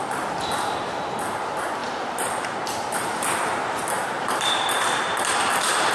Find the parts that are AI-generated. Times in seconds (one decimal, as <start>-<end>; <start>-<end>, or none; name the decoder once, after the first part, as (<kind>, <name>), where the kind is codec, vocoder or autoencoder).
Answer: 1.8-5.3 (vocoder, BigVGAN v2)